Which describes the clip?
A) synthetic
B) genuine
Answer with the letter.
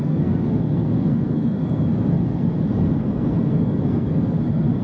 A